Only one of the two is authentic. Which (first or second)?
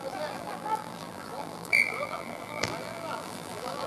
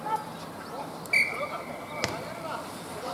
second